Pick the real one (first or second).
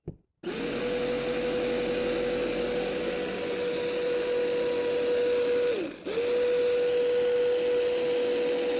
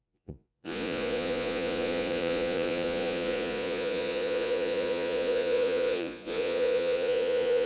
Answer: first